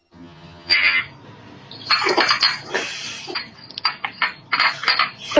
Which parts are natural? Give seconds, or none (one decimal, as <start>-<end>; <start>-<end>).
1.0-5.4